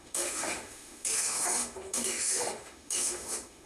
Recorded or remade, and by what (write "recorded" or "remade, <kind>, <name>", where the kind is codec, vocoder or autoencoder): remade, autoencoder, DAC-VAE